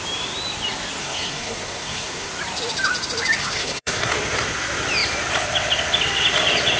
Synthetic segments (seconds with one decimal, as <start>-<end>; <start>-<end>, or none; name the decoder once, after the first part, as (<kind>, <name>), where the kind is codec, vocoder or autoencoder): 1.0-2.3 (codec, SNAC); 3.4-4.1